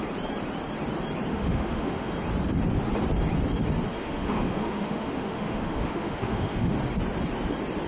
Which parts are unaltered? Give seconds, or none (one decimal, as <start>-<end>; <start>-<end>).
0.0-1.3; 2.1-3.9; 6.7-7.9